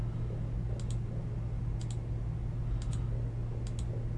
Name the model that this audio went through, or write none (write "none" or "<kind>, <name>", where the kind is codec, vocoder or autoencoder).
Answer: none